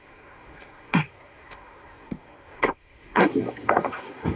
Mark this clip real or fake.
fake